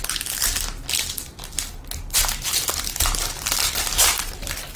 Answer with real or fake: real